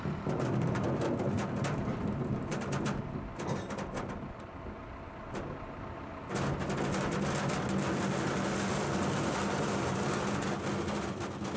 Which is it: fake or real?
real